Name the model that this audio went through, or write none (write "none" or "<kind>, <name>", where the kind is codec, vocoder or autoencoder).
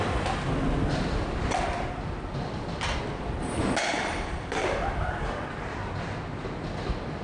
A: none